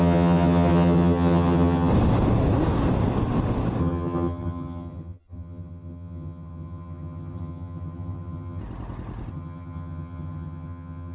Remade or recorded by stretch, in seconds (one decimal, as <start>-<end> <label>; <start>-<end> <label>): 0.0-1.9 remade; 1.9-3.8 recorded; 3.8-8.6 remade; 8.6-9.3 recorded; 9.3-11.1 remade